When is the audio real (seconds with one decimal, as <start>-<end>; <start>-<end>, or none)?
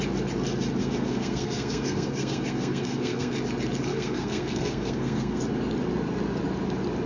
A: 0.0-0.8; 3.3-3.9; 5.4-7.1